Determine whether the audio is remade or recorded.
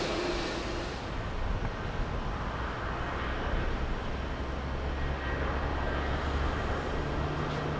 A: recorded